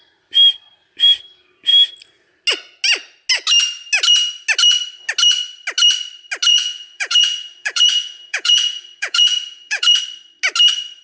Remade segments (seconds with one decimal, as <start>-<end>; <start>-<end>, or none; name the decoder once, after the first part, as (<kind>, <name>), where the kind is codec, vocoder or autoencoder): 6.5-10.0 (vocoder, Vocos)